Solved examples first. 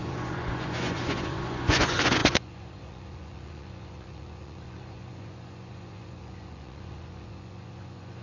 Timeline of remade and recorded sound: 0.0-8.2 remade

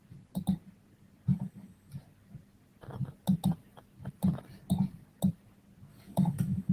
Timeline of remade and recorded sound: 0.0-1.3 recorded; 1.3-1.9 remade; 1.9-5.9 recorded; 5.9-6.7 remade

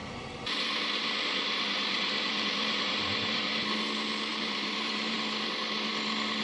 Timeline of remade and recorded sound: 0.0-3.8 remade; 3.8-4.3 recorded; 4.3-5.2 remade; 5.2-6.4 recorded

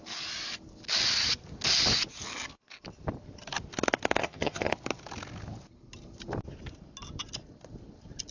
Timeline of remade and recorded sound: 0.0-4.2 recorded; 4.2-4.7 remade; 4.7-8.3 recorded

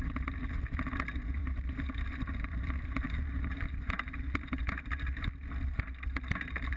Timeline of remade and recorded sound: 0.0-1.4 recorded; 1.4-5.3 remade; 5.3-6.8 recorded

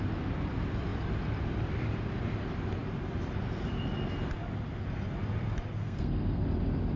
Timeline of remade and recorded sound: 0.0-5.8 recorded; 5.8-6.4 remade; 6.4-7.0 recorded

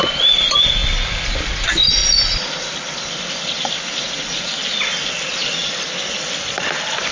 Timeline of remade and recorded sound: 0.0-2.0 recorded; 2.0-4.5 remade; 4.5-7.1 recorded